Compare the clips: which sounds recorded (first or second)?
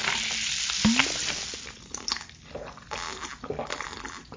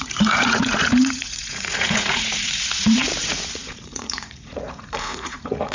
first